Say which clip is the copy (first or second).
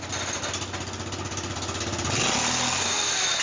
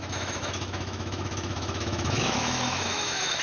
second